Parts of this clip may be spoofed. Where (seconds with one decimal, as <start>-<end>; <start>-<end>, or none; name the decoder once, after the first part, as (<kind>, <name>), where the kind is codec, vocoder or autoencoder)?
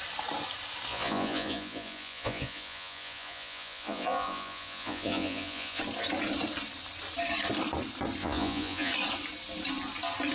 0.9-5.8 (vocoder, Vocos); 8.2-8.9